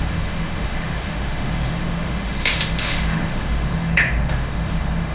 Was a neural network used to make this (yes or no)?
yes